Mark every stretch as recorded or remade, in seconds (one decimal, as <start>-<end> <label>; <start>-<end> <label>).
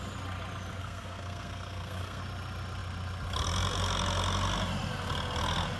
0.0-0.8 recorded; 0.8-2.2 remade; 2.2-5.8 recorded